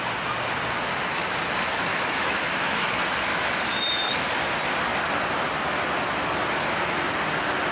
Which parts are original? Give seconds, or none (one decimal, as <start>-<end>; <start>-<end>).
0.0-1.9; 2.9-3.3; 3.8-7.7